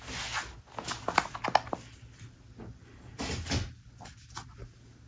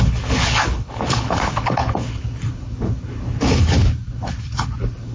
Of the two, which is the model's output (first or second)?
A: second